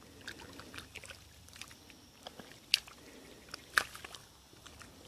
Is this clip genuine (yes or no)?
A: yes